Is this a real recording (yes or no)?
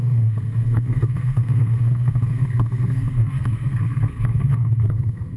no